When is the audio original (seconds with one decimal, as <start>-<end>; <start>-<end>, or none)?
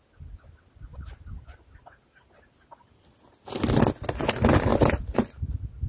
0.0-5.9